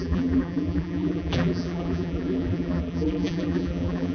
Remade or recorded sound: remade